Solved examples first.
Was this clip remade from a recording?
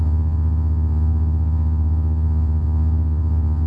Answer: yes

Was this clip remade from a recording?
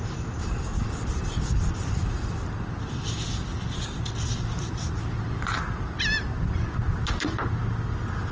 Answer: no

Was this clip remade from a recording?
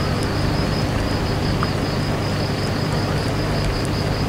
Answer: no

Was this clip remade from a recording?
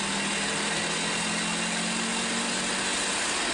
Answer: no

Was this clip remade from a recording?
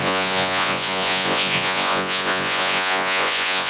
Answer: yes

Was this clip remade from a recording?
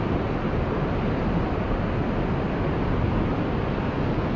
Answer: no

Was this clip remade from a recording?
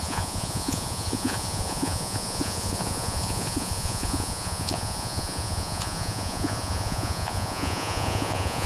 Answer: yes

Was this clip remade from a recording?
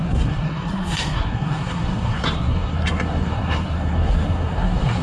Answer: yes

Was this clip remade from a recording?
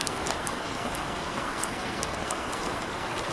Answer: yes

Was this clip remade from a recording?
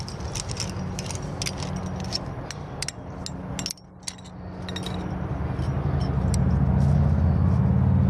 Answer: no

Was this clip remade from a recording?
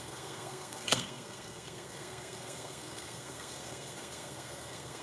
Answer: yes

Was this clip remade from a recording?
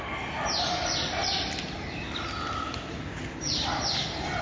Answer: no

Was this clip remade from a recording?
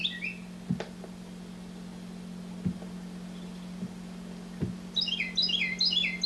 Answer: no